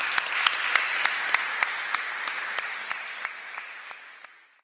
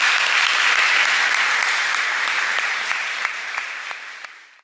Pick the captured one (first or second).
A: first